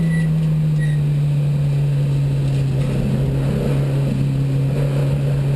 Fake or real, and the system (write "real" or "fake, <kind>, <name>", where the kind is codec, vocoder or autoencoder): real